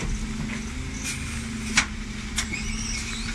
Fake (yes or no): no